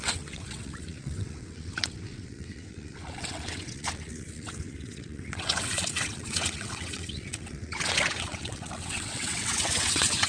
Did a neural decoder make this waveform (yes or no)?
yes